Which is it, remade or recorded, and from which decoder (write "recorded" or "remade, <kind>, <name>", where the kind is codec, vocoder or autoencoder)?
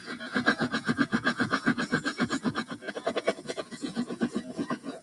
remade, vocoder, Vocos